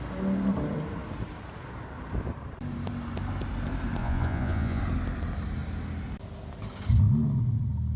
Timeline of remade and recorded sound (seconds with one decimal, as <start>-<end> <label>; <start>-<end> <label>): 0.0-4.0 recorded; 4.0-4.8 remade; 4.8-8.0 recorded